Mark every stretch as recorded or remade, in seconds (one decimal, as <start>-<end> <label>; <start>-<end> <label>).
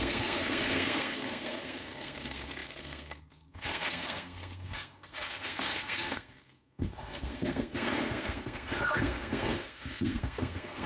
0.0-10.9 remade